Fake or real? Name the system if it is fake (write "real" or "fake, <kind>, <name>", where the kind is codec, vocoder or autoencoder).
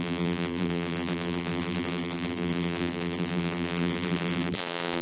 fake, vocoder, BigVGAN v2